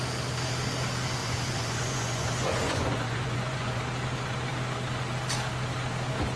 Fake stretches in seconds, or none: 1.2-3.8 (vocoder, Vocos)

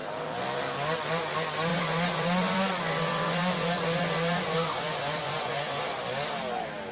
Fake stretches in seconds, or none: 1.7-5.8 (vocoder, Vocos)

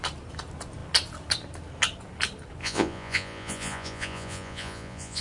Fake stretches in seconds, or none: 2.6-5.2 (vocoder, Vocos)

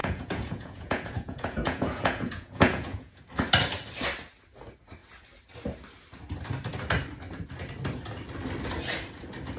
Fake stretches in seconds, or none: 0.0-3.2 (vocoder, Vocos)

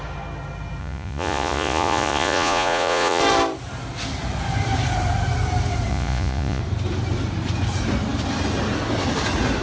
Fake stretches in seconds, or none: 0.8-3.2 (vocoder, Vocos); 5.9-6.6

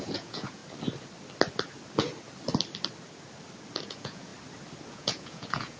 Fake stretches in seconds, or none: 0.0-0.6 (vocoder, Vocos); 3.8-4.3; 4.9-5.8